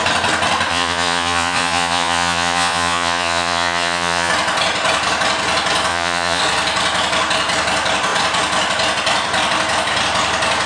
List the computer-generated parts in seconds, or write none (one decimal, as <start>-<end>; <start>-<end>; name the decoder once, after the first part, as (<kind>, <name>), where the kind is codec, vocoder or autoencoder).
0.7-4.3 (vocoder, Vocos); 5.9-6.4

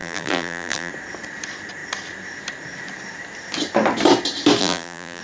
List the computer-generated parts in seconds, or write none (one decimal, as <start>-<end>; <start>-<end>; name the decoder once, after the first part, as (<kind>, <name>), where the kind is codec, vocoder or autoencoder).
0.0-0.9 (vocoder, BigVGAN v2); 4.6-5.2

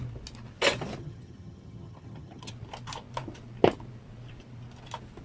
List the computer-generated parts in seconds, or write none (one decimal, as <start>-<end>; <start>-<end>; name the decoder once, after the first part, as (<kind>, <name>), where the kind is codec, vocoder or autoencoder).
1.0-2.5 (vocoder, HiFi-GAN)